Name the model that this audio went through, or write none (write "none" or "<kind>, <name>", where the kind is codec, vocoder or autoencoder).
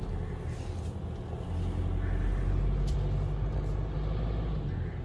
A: none